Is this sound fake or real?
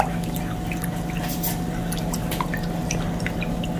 real